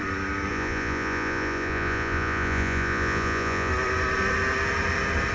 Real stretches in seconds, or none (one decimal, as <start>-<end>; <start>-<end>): 0.0-0.5; 3.7-5.3